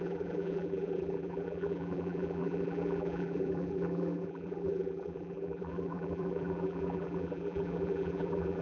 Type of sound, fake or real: fake